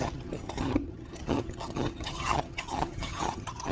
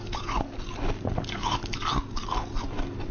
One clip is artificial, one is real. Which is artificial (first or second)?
first